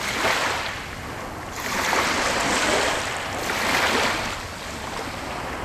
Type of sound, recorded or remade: recorded